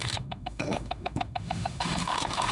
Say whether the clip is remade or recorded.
remade